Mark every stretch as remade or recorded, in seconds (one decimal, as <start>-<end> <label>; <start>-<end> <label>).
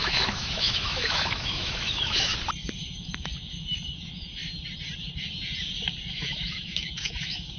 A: 0.0-2.3 remade; 2.3-2.8 recorded; 2.8-4.4 remade; 4.4-6.1 recorded; 6.1-7.6 remade